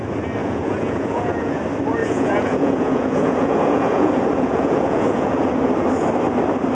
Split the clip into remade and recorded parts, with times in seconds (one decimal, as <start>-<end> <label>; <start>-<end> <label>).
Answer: 0.0-0.4 recorded; 0.4-1.6 remade; 1.6-2.0 recorded; 2.0-5.5 remade; 5.5-6.7 recorded